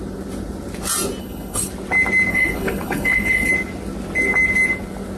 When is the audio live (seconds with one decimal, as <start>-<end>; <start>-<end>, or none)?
0.0-1.2; 1.7-2.3; 3.5-5.2